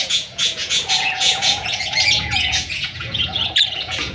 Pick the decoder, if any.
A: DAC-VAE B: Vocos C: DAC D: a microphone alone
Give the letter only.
B